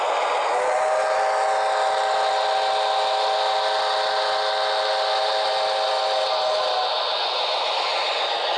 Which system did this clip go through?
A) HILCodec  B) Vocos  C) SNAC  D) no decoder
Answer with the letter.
D